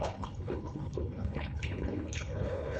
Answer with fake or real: fake